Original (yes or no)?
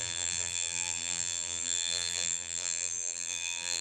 no